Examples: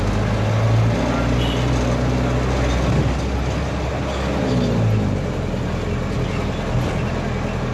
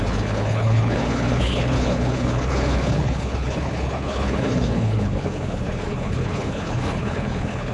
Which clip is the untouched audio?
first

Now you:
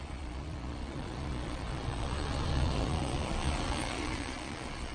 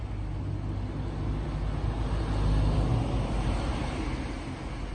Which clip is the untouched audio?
second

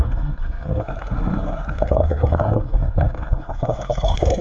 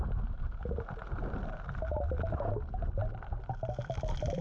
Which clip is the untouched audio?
second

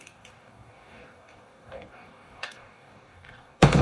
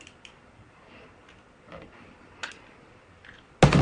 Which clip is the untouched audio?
second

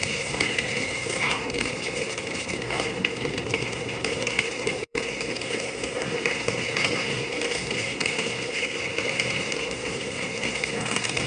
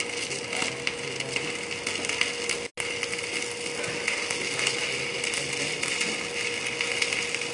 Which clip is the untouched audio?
second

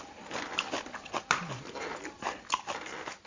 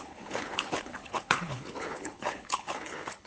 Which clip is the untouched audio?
first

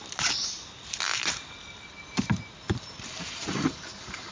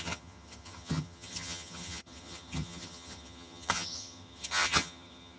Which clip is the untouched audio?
first